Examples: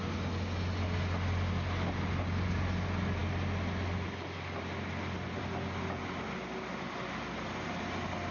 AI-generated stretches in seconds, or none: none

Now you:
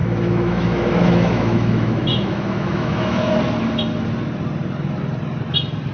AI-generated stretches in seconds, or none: 0.0-3.4 (autoencoder, DAC-VAE)

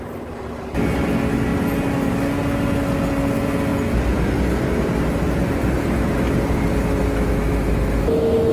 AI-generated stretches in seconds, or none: none

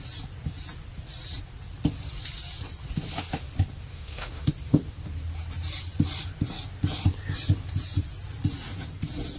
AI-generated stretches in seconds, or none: 3.9-4.5 (autoencoder, DAC-VAE)